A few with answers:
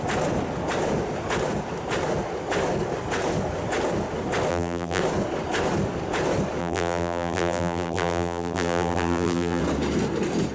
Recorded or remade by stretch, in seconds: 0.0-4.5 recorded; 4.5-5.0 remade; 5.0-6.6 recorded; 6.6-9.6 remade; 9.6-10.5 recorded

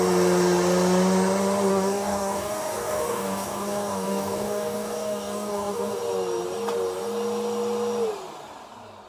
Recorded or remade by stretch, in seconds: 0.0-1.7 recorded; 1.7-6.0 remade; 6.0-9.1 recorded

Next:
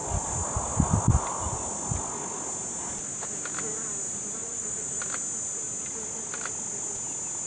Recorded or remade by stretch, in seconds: 0.0-4.4 recorded; 4.4-5.0 remade; 5.0-7.5 recorded